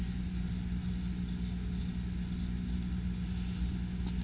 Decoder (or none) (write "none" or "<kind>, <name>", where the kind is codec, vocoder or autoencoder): none